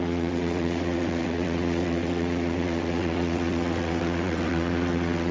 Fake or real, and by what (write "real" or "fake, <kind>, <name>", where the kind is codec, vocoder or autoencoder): fake, vocoder, WaveNeXt